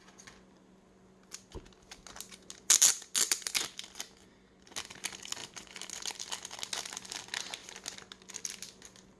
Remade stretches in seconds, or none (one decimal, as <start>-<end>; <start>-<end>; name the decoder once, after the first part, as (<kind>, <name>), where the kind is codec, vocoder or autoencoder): none